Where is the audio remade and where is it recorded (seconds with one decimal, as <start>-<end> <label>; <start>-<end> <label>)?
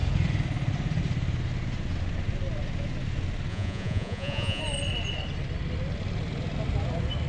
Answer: 0.0-3.5 recorded; 3.5-4.6 remade; 4.6-7.3 recorded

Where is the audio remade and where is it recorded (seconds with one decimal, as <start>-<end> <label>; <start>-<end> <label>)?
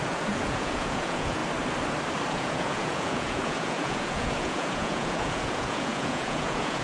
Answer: 0.0-1.4 remade; 1.4-2.3 recorded; 2.3-6.8 remade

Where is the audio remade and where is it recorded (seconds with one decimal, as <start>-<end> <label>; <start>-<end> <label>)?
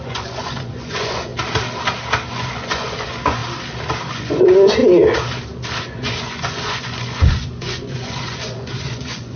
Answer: 0.0-1.3 remade; 1.3-2.3 recorded; 2.3-3.4 remade; 3.4-4.1 recorded; 4.1-4.8 remade; 4.8-5.8 recorded; 5.8-9.4 remade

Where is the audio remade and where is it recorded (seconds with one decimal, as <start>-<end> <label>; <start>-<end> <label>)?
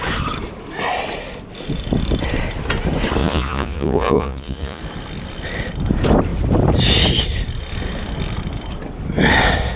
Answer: 0.0-3.2 recorded; 3.2-4.8 remade; 4.8-9.8 recorded